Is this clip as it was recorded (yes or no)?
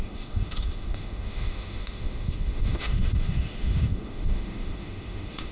no